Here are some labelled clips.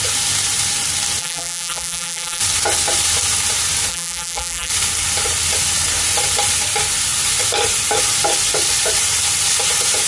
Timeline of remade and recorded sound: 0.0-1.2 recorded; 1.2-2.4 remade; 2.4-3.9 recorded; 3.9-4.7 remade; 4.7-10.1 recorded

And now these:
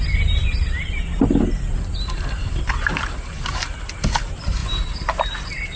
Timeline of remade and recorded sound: 0.0-5.8 recorded

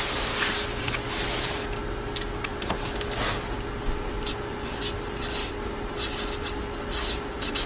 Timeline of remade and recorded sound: 0.0-7.7 recorded

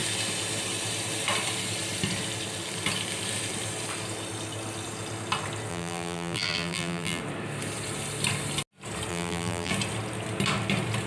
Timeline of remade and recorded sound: 0.0-5.7 recorded; 5.7-7.2 remade; 7.2-9.1 recorded; 9.1-9.7 remade; 9.7-11.1 recorded

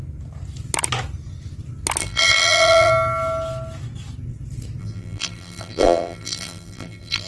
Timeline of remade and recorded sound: 0.0-2.0 recorded; 2.0-2.9 remade; 2.9-4.8 recorded; 4.8-7.3 remade